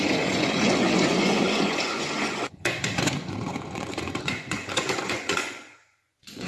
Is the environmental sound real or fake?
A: fake